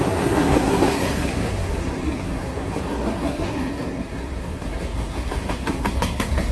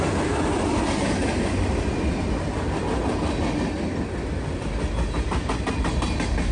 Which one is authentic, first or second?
second